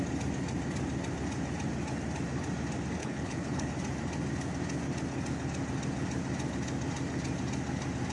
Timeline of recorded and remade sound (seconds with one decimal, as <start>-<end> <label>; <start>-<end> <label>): 0.0-3.0 recorded; 3.0-3.7 remade; 3.7-8.1 recorded

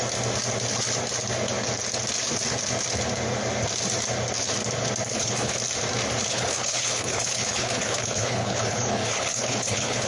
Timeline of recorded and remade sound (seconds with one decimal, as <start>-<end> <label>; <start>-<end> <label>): 0.0-5.1 recorded; 5.1-5.6 remade; 5.6-6.3 recorded; 6.3-10.1 remade

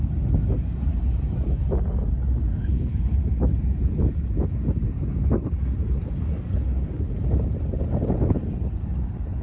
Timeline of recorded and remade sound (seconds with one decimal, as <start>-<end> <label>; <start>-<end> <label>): 0.0-2.5 recorded; 2.5-3.2 remade; 3.2-9.4 recorded

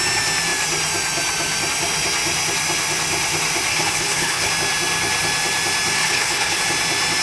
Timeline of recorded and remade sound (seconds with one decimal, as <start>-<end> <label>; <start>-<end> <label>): 0.0-3.7 recorded; 3.7-4.5 remade; 4.5-6.0 recorded; 6.0-6.6 remade; 6.6-7.2 recorded

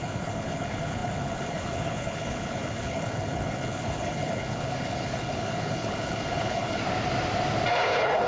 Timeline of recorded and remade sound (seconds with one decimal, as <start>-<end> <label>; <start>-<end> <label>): 0.0-6.8 remade; 6.8-7.7 recorded; 7.7-8.3 remade

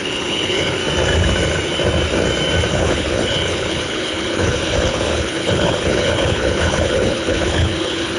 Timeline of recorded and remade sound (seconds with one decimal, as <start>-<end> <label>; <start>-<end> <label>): 0.0-0.8 remade; 0.8-2.7 recorded; 2.7-8.2 remade

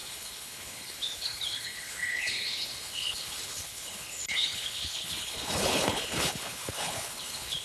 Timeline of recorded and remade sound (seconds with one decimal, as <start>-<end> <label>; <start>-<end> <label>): 0.0-7.6 remade

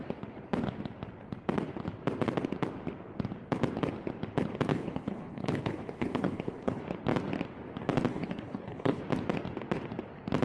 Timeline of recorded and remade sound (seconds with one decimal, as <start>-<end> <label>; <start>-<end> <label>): 0.0-4.7 recorded; 4.7-6.8 remade; 6.8-8.1 recorded; 8.1-9.0 remade; 9.0-10.4 recorded